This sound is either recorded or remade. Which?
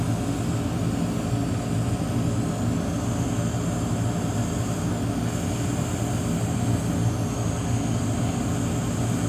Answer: recorded